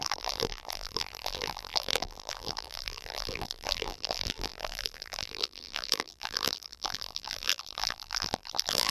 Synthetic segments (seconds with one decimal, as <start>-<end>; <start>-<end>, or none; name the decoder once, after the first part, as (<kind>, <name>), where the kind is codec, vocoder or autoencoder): 0.0-8.9 (vocoder, BigVGAN v2)